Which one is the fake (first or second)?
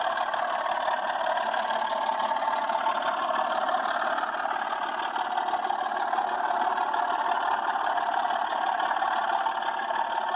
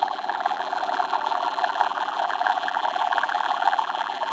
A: second